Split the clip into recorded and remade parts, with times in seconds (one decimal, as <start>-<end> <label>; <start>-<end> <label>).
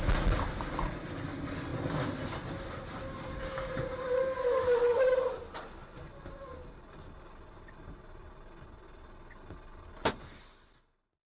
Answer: 0.0-11.3 recorded